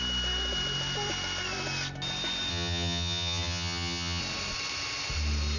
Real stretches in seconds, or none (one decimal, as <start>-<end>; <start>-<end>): 0.0-2.5; 4.2-5.6